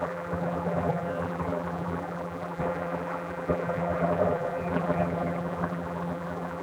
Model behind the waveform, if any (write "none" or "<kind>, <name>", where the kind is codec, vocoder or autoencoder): vocoder, BigVGAN v2